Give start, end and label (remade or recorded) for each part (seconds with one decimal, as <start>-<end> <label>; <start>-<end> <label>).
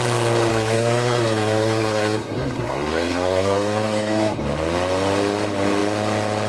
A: 0.0-0.5 recorded; 0.5-4.4 remade; 4.4-6.5 recorded